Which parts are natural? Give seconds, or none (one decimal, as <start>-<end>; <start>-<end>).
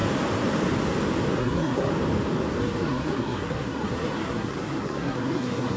0.0-1.4; 1.9-2.6